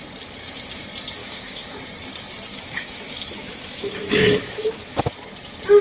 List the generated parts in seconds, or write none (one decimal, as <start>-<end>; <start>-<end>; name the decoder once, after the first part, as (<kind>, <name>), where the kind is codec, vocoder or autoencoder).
1.2-1.8 (autoencoder, DAC-VAE); 2.5-5.1